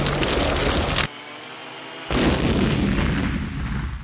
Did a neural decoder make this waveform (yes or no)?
no